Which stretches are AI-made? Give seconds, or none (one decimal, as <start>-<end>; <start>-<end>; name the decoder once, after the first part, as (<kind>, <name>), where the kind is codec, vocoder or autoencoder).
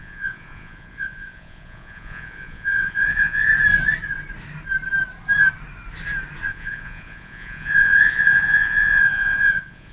0.0-3.5 (vocoder, Vocos); 6.5-9.9